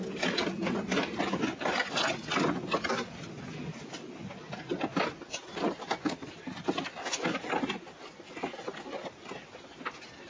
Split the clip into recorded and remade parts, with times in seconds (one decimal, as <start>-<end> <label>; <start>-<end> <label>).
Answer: 0.0-10.3 recorded